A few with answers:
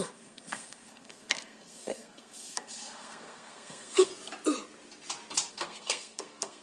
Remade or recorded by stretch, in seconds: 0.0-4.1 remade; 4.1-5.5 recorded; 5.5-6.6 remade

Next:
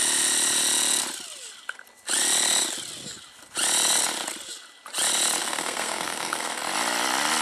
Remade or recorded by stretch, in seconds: 0.0-5.4 recorded; 5.4-6.6 remade; 6.6-7.4 recorded

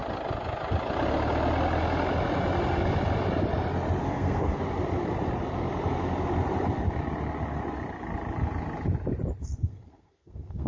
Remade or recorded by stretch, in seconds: 0.0-4.0 recorded; 4.0-4.6 remade; 4.6-9.4 recorded; 9.4-10.7 remade

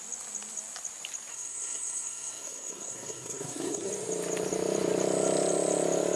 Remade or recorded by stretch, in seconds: 0.0-1.3 recorded; 1.3-3.9 remade; 3.9-6.2 recorded

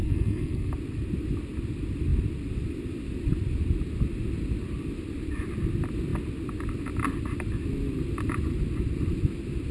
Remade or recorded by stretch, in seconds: 0.0-0.7 remade; 0.7-9.7 recorded